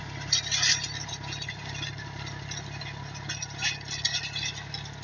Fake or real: real